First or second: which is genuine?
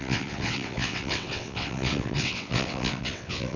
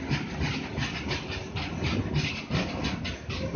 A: second